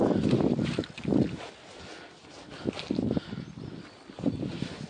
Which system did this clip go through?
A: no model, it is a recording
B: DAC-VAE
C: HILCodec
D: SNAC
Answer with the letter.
A